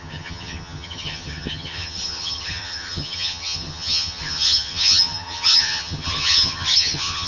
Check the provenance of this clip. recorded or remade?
remade